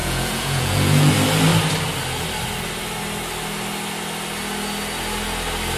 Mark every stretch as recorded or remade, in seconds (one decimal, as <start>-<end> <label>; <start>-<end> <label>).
0.0-1.1 remade; 1.1-5.8 recorded